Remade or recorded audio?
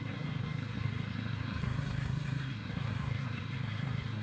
remade